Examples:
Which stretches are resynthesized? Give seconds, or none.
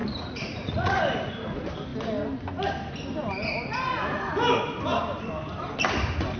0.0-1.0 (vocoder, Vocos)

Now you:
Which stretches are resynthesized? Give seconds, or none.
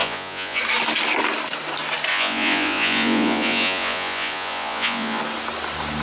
0.0-0.6 (vocoder, Vocos); 2.1-5.2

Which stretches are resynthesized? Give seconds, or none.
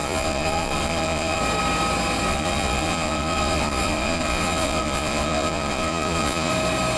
0.0-1.4 (vocoder, Vocos); 2.3-6.5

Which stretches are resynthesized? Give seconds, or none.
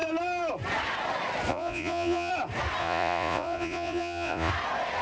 1.5-2.3 (vocoder, Vocos); 2.8-4.5